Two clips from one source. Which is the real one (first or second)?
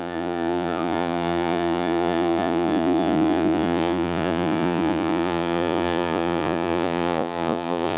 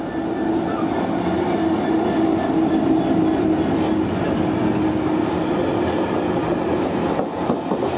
second